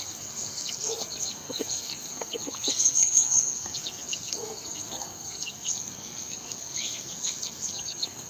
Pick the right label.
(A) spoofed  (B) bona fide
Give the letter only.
A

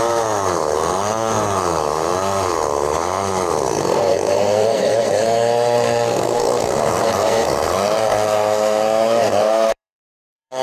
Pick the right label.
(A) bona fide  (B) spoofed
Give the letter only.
B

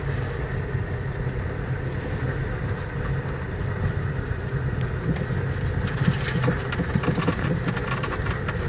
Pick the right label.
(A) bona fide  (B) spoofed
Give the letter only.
A